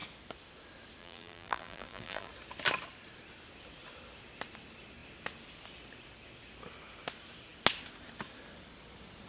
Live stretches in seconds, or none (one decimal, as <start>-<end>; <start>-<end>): 0.0-1.0; 2.3-9.3

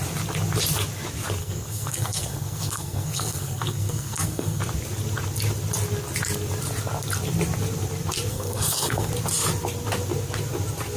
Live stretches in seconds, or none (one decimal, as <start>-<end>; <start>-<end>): 0.0-1.4; 4.6-8.3; 9.1-11.0